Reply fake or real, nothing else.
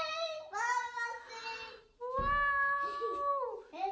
real